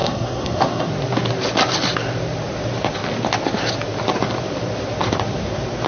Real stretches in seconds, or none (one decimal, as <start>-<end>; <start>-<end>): 0.9-5.9